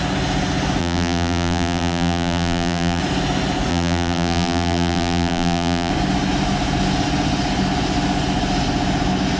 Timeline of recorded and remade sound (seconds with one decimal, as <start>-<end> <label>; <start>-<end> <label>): 0.0-0.8 recorded; 0.8-3.0 remade; 3.0-3.7 recorded; 3.7-5.9 remade; 5.9-9.4 recorded